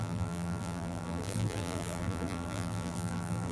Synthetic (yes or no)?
yes